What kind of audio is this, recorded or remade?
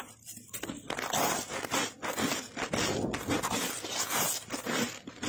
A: recorded